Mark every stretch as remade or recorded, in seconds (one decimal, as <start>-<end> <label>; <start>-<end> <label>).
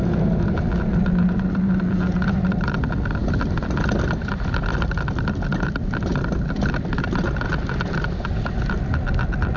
0.0-9.6 recorded